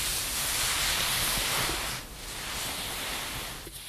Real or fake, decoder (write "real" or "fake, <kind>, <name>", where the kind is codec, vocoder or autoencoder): real